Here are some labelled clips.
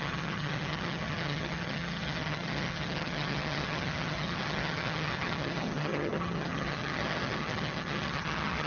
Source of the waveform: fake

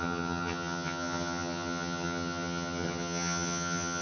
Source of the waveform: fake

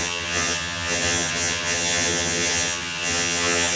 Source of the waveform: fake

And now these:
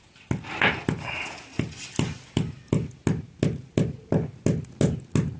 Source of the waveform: real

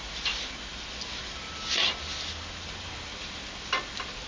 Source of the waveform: real